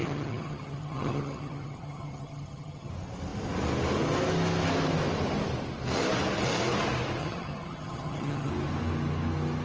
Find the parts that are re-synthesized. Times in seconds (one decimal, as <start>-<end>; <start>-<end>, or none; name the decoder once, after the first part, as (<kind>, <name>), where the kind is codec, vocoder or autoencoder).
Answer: 0.0-2.9 (vocoder, HiFi-GAN); 7.2-8.5